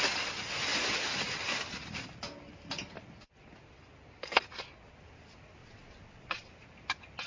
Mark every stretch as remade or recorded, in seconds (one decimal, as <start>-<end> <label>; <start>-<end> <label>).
0.0-5.6 recorded; 5.6-6.5 remade; 6.5-7.3 recorded